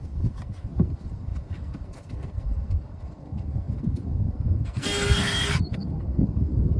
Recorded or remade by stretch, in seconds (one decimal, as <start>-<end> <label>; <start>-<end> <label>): 0.0-6.8 remade